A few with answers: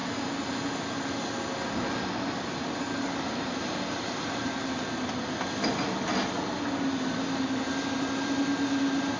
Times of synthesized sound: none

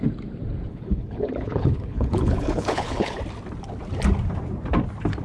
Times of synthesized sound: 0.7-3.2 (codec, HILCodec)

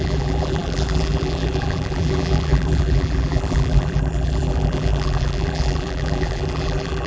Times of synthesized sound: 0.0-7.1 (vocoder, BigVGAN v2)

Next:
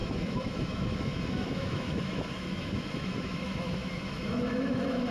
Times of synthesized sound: 0.0-5.1 (autoencoder, DAC-VAE)

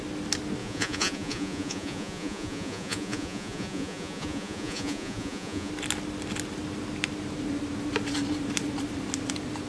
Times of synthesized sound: 0.6-5.7 (vocoder, Vocos)

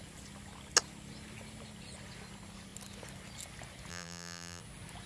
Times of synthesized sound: 3.9-4.6 (vocoder, BigVGAN v2)

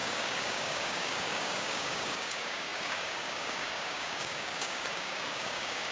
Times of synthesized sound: 0.0-5.9 (codec, DAC)